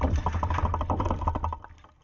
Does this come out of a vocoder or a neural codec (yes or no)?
no